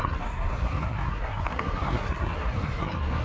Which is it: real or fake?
fake